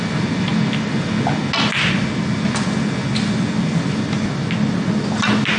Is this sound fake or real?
real